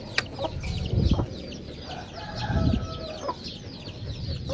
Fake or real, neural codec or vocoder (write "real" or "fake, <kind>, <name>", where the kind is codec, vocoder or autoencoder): real